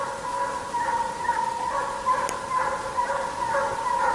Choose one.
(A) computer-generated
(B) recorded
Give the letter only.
B